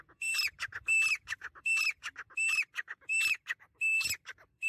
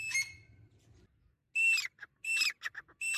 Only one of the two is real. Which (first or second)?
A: second